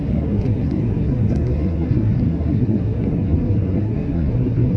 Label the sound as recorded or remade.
remade